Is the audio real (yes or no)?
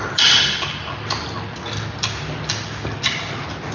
yes